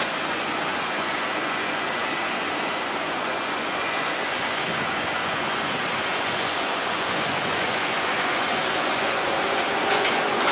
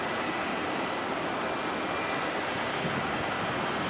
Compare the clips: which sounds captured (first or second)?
second